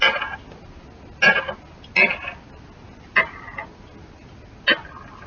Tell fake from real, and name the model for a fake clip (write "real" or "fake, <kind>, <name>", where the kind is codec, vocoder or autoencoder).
real